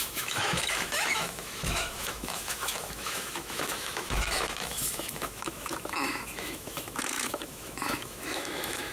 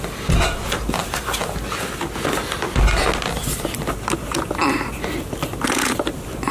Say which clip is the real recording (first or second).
second